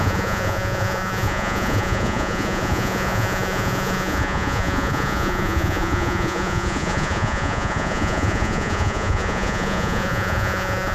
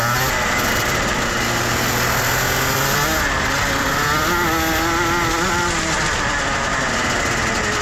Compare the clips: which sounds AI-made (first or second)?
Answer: first